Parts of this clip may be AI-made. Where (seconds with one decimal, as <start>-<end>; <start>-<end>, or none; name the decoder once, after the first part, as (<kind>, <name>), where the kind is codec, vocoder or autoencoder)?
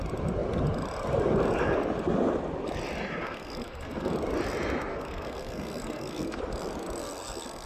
3.2-4.1 (codec, SNAC); 4.9-6.4; 7.0-7.7